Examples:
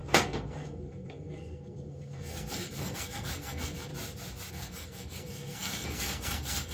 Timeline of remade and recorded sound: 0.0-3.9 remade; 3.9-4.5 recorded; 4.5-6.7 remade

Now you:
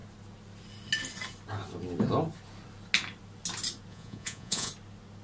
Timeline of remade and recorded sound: 0.0-3.9 recorded; 3.9-4.7 remade; 4.7-5.2 recorded